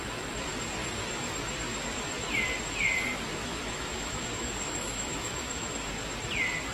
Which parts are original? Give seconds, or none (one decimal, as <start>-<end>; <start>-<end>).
0.0-3.4; 5.9-6.7